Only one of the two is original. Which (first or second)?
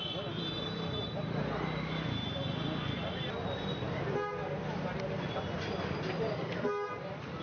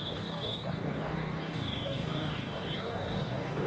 first